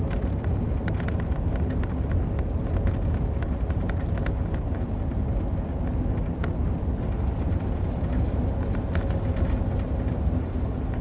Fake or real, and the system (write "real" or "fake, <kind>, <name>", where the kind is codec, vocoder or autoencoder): real